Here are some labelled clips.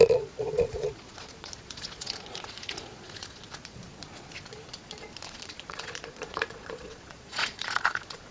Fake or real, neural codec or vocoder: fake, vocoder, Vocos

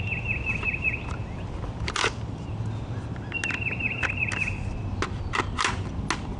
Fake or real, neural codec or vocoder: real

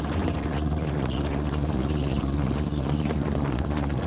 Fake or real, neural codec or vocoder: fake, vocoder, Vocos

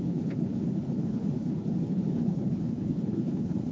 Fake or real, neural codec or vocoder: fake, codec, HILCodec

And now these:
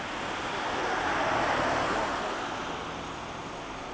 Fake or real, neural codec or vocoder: real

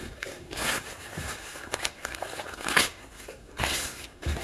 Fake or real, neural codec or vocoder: fake, codec, SNAC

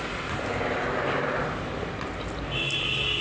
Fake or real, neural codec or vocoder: real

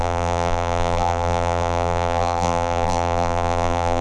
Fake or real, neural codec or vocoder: fake, vocoder, BigVGAN v2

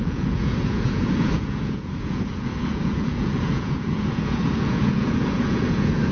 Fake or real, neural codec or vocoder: fake, vocoder, Vocos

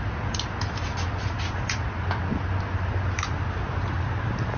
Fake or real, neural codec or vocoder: real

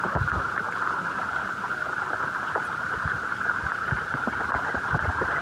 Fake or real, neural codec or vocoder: real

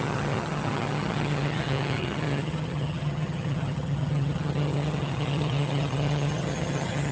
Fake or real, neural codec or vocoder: fake, vocoder, HiFi-GAN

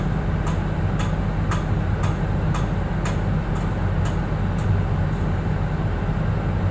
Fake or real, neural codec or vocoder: real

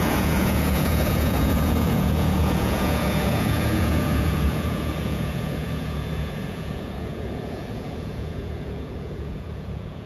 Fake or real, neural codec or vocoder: fake, vocoder, Vocos